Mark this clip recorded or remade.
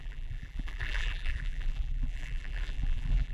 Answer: remade